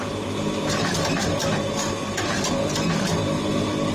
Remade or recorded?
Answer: recorded